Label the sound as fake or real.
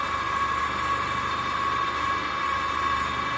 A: fake